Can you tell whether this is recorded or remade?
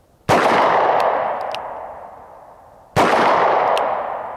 recorded